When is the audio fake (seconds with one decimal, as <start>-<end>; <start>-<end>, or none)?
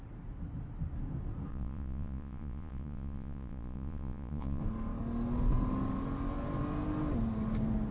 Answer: 1.5-4.6